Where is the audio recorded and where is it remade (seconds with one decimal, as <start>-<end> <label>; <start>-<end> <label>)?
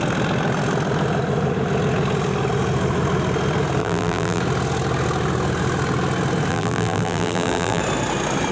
0.0-3.8 recorded; 3.8-4.4 remade; 4.4-6.5 recorded; 6.5-7.8 remade; 7.8-8.5 recorded